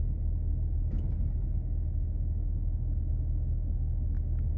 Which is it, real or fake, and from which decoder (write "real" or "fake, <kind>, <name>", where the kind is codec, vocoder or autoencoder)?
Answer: real